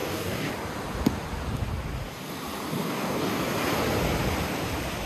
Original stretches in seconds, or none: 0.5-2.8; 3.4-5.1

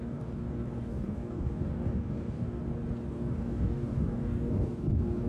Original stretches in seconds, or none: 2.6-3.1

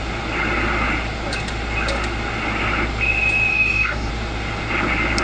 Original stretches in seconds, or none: 0.0-3.5; 4.1-5.2

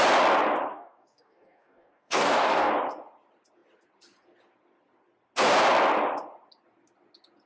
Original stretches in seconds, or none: 0.0-0.7; 2.7-7.5

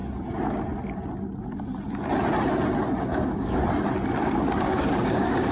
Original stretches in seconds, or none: 0.0-3.0; 3.6-4.2

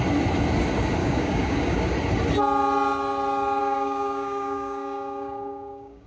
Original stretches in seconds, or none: 0.0-1.0; 1.9-3.6

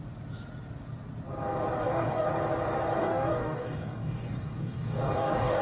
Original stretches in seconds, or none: 0.0-1.8; 2.3-3.0